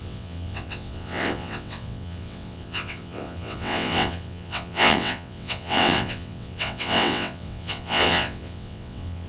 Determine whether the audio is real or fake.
fake